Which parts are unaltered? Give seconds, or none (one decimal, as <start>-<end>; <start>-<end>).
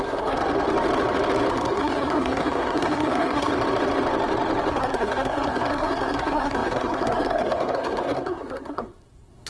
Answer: 0.4-1.5; 3.5-4.7